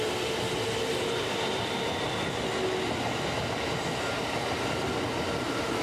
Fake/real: real